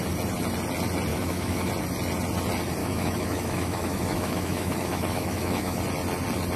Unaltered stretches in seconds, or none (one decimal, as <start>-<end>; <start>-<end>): 0.0-1.1; 1.7-2.8; 5.8-6.6